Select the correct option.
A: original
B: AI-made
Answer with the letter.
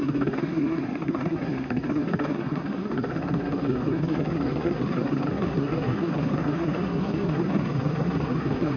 B